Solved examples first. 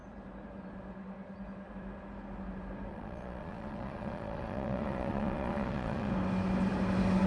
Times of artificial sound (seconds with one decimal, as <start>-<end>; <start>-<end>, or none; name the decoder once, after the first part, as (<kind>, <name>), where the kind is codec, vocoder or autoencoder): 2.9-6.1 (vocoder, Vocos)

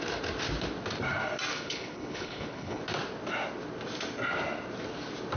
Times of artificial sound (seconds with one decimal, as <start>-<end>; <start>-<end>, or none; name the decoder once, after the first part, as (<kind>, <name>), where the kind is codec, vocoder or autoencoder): 1.5-2.8 (codec, HILCodec)

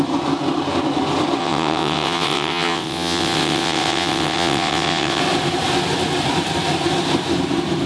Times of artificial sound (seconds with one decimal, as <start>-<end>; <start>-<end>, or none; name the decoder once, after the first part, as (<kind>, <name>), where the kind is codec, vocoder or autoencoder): 1.4-5.2 (vocoder, WaveNeXt)

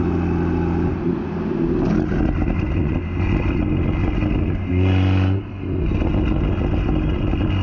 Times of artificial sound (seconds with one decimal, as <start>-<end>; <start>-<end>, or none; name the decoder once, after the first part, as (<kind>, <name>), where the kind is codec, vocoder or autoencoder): none

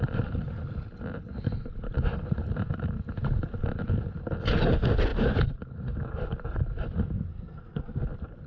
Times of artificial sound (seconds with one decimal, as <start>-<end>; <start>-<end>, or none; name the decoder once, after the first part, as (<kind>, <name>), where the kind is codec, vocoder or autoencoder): 7.3-8.0 (codec, SNAC)

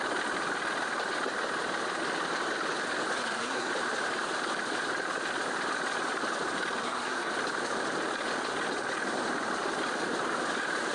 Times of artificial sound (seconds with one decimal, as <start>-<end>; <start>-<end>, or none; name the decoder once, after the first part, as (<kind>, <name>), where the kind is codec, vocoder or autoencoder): 3.2-3.7 (codec, SNAC); 6.8-7.3